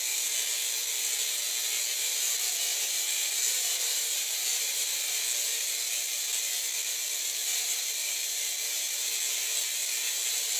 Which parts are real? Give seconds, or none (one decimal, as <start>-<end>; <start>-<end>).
0.0-2.7; 3.3-7.0; 8.5-10.6